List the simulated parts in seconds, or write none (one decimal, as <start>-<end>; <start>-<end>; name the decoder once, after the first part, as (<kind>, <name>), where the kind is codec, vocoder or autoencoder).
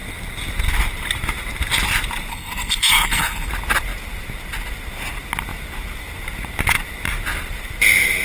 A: 2.3-3.5 (codec, SNAC)